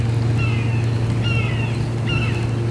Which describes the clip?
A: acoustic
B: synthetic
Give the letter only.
A